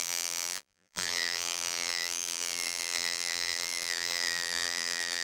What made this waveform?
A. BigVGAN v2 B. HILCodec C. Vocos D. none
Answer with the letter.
A